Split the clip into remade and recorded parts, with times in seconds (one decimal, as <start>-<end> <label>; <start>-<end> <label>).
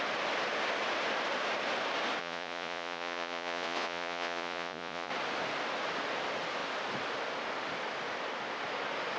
0.0-2.2 recorded; 2.2-5.1 remade; 5.1-9.2 recorded